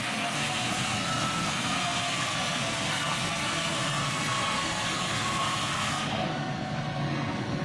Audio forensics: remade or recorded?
remade